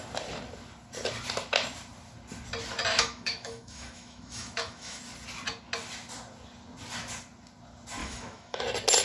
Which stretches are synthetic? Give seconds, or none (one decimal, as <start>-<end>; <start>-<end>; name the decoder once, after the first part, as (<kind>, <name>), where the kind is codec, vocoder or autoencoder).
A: 2.9-5.0 (autoencoder, DAC-VAE); 8.0-8.6